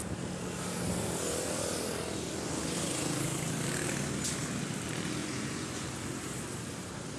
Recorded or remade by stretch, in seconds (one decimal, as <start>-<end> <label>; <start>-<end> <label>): 0.0-5.2 recorded; 5.2-5.9 remade; 5.9-7.2 recorded